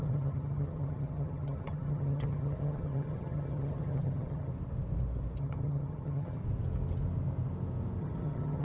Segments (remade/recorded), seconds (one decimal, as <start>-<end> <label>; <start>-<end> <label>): 0.0-4.5 remade; 4.5-5.4 recorded; 5.4-6.4 remade; 6.4-8.0 recorded; 8.0-8.6 remade